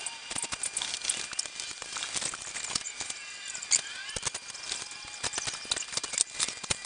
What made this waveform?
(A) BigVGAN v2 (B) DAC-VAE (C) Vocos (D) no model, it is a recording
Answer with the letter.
D